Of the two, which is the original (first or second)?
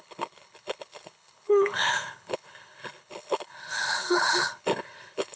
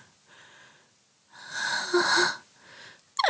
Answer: second